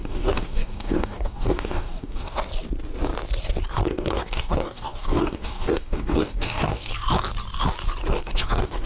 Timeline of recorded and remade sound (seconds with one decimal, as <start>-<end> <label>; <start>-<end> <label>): 0.0-2.5 remade; 2.5-3.9 recorded; 3.9-6.9 remade; 6.9-8.1 recorded; 8.1-8.9 remade